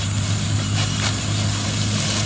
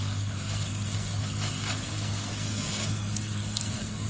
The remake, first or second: second